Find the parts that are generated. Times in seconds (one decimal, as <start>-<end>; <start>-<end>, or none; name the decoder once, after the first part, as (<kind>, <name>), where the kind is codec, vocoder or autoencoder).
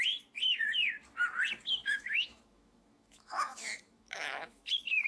1.8-5.1 (autoencoder, DAC-VAE)